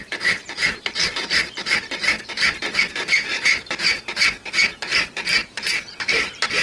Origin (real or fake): fake